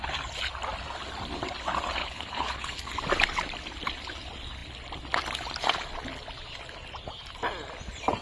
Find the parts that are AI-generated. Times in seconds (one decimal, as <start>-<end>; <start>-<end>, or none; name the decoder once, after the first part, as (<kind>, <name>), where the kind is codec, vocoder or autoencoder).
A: 2.0-2.8 (codec, HILCodec)